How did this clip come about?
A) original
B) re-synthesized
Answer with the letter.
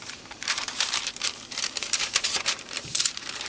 B